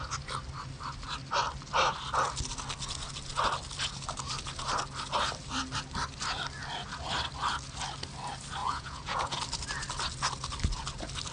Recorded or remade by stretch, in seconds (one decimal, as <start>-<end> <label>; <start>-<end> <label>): 0.0-8.6 recorded; 8.6-9.4 remade; 9.4-11.3 recorded